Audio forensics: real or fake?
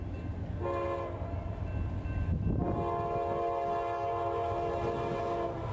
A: real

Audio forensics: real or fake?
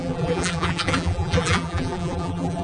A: fake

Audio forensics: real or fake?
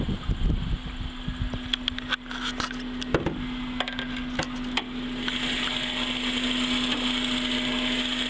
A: real